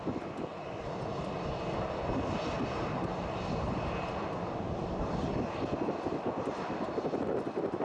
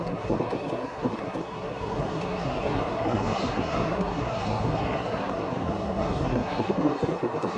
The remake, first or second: second